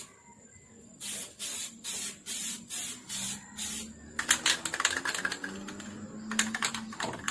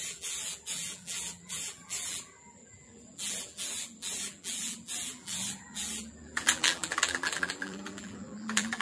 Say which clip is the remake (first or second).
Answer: second